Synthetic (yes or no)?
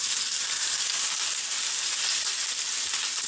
no